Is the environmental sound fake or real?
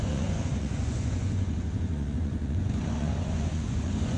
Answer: fake